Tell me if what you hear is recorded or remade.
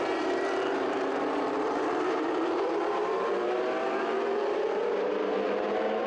remade